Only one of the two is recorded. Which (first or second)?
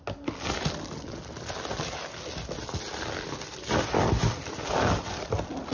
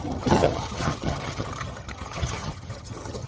first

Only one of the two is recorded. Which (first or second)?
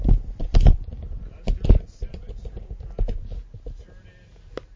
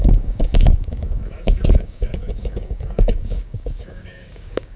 first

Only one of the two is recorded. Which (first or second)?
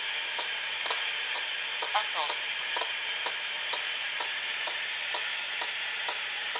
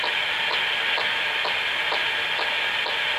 second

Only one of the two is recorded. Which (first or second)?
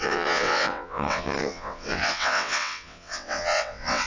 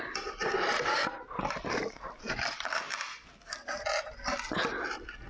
second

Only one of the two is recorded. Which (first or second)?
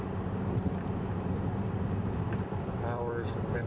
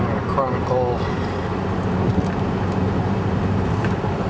second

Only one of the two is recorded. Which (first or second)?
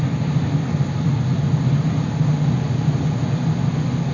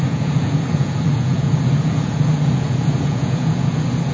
first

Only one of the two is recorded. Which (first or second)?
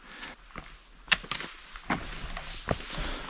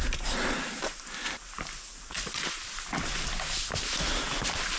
first